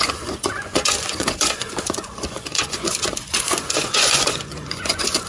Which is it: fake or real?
fake